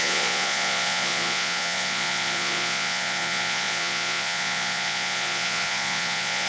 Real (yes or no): no